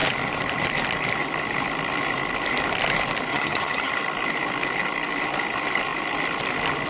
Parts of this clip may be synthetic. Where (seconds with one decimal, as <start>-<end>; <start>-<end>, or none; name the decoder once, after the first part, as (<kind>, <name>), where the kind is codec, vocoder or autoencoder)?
3.3-3.9 (vocoder, HiFi-GAN)